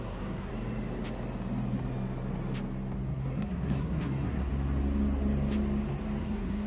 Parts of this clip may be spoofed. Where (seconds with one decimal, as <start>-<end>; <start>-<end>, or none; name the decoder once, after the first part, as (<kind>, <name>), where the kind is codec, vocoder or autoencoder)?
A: 0.0-0.5 (codec, SNAC); 3.1-4.5; 6.2-6.7